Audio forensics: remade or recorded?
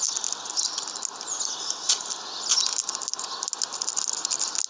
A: recorded